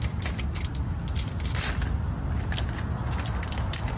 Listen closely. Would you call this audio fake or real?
real